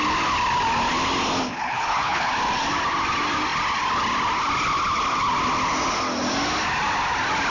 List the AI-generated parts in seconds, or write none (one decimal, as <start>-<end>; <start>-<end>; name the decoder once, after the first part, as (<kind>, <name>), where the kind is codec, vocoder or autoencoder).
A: 1.5-2.3 (codec, HILCodec)